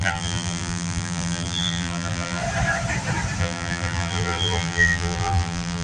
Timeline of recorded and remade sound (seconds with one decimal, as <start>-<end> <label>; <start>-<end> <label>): 0.0-2.4 remade; 2.4-3.4 recorded; 3.4-5.8 remade